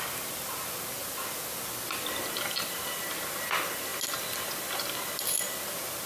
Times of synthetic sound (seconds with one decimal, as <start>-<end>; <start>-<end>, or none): none